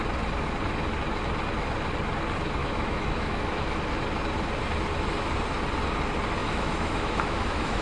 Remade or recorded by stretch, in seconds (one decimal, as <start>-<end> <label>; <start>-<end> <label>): 0.0-2.6 recorded; 2.6-3.8 remade; 3.8-6.4 recorded; 6.4-7.8 remade